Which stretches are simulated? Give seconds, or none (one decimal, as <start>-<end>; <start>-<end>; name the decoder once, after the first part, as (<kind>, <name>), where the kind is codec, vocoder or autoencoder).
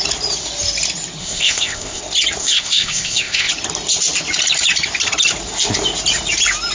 1.2-2.0 (codec, ZipCodec); 2.4-3.5